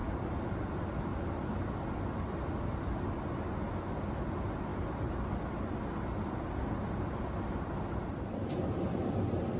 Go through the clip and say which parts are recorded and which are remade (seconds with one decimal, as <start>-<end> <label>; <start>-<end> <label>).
0.0-9.6 recorded